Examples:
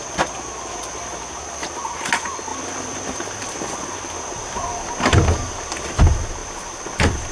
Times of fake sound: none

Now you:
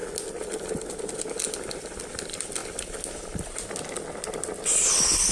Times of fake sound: none

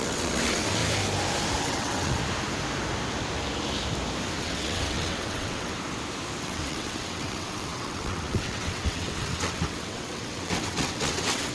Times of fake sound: 0.0-0.8; 1.6-2.2; 4.4-5.7; 6.4-11.5

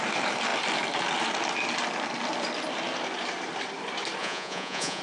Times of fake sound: 4.2-5.0